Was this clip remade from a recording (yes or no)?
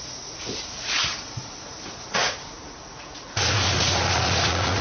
yes